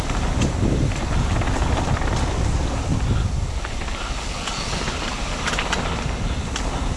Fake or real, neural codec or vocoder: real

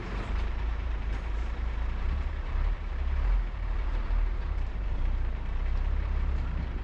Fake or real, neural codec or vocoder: fake, vocoder, BigVGAN v2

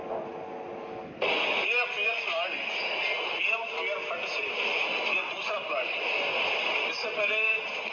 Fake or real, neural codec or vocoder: real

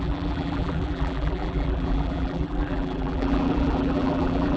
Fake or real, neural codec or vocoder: fake, vocoder, BigVGAN v2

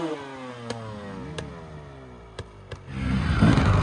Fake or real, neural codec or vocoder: real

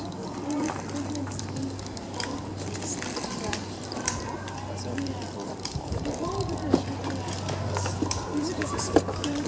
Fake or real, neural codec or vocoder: real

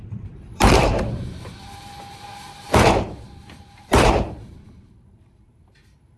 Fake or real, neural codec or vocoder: fake, vocoder, BigVGAN v2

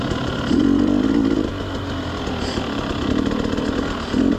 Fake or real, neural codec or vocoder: real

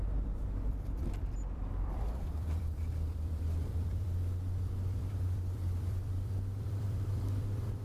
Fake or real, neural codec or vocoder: fake, vocoder, BigVGAN v2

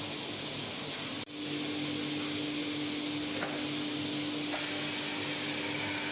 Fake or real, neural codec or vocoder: real